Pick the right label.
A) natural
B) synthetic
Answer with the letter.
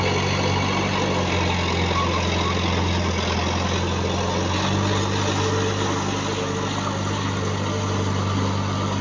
A